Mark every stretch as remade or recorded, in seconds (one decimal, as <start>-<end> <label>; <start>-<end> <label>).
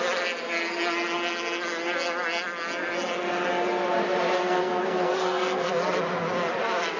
0.0-4.4 recorded; 4.4-5.7 remade; 5.7-7.0 recorded